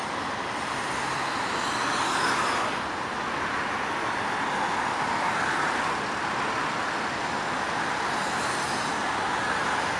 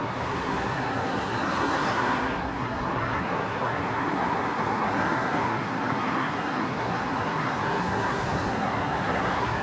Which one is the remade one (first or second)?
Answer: second